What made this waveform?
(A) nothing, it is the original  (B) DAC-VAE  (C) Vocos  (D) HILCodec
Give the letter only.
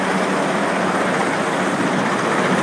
A